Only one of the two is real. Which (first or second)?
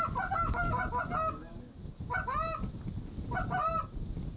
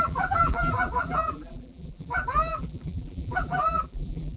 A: first